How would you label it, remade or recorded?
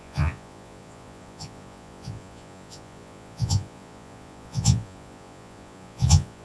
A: remade